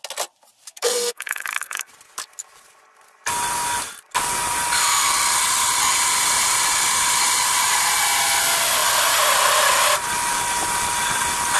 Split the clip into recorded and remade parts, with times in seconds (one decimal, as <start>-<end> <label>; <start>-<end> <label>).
0.0-0.7 recorded; 0.7-1.9 remade; 1.9-11.6 recorded